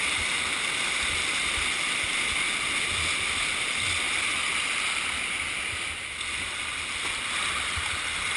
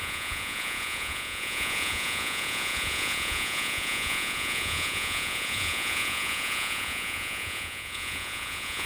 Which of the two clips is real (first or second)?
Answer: first